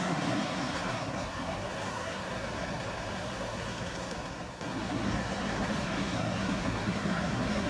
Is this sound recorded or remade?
remade